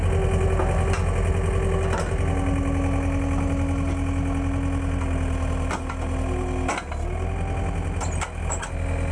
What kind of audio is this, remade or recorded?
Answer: recorded